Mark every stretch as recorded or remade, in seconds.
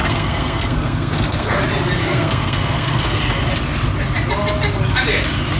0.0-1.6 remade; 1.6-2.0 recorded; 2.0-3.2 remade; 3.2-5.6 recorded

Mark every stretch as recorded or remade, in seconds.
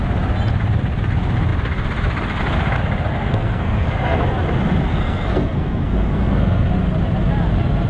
0.0-3.1 recorded; 3.1-4.2 remade; 4.2-4.9 recorded; 4.9-6.7 remade; 6.7-7.9 recorded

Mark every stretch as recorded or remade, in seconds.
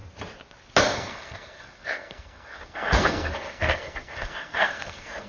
0.0-0.8 recorded; 0.8-5.3 remade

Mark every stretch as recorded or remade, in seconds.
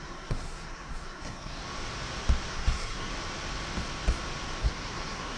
0.0-1.6 remade; 1.6-2.5 recorded; 2.5-3.1 remade; 3.1-4.6 recorded; 4.6-5.4 remade